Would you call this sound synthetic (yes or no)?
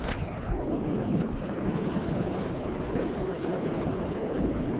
yes